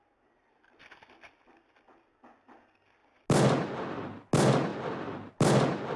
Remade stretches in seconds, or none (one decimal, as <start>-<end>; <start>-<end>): none

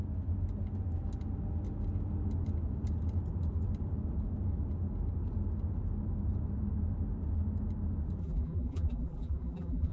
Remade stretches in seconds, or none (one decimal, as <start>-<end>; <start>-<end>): 8.2-9.9

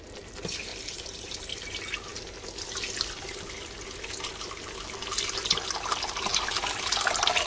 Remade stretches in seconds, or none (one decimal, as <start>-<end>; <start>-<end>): 0.7-1.7; 6.3-6.8

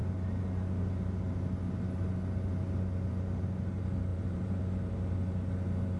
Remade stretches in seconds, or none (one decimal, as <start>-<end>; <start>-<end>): 4.1-4.6

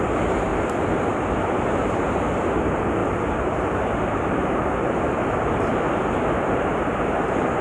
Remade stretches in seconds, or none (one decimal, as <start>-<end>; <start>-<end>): 0.0-0.5; 1.3-7.6

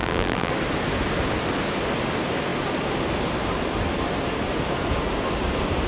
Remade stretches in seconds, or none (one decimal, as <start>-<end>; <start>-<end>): 0.0-0.5

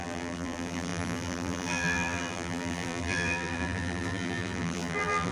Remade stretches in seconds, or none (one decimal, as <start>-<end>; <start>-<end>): 0.0-5.3

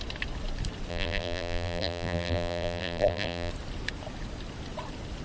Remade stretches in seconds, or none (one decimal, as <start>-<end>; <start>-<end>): 0.9-3.5